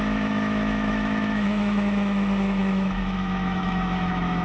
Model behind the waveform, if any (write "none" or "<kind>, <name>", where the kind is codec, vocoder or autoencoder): autoencoder, DAC-VAE